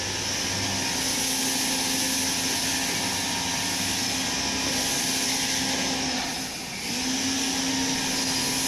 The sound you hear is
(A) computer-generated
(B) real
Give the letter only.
B